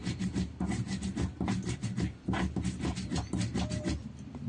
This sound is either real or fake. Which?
real